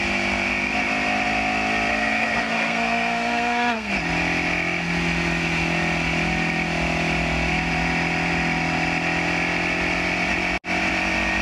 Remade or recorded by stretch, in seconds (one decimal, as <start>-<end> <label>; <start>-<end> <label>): 0.0-1.9 recorded; 1.9-3.9 remade; 3.9-11.4 recorded